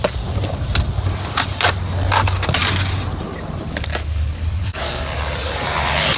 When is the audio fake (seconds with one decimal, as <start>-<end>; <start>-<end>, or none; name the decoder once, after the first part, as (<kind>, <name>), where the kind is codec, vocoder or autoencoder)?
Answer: 3.9-4.9 (codec, DAC)